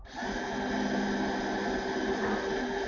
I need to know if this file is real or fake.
real